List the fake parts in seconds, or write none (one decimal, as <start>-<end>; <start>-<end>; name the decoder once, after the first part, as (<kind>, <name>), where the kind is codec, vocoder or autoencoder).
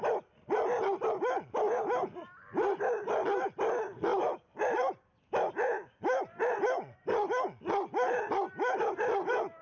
4.1-6.4 (vocoder, BigVGAN v2)